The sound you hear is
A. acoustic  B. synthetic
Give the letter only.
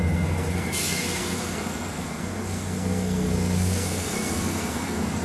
B